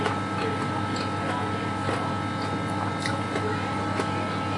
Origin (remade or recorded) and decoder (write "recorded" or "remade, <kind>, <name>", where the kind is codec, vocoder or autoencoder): recorded